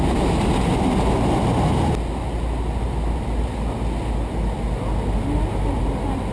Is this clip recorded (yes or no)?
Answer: yes